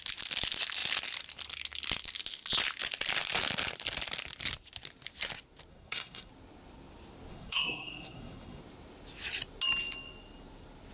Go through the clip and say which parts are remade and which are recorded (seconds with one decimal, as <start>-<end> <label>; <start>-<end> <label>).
0.0-5.7 recorded; 5.7-6.3 remade; 6.3-7.3 recorded; 7.3-8.6 remade; 8.6-10.9 recorded